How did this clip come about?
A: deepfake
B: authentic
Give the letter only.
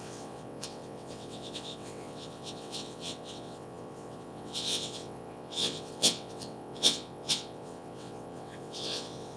A